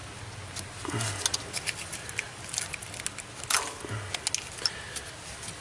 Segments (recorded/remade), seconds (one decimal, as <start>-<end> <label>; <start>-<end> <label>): 0.0-5.6 recorded